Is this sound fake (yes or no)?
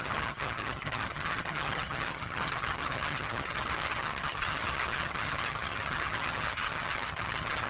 yes